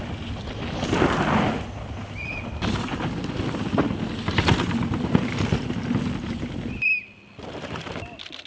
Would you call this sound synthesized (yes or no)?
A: no